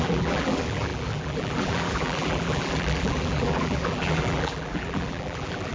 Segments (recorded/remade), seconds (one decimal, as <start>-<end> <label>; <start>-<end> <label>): 0.0-5.7 remade